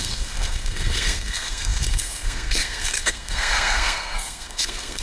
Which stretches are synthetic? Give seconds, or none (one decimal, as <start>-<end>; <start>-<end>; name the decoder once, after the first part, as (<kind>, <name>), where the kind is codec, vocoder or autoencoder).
0.0-5.0 (codec, SNAC)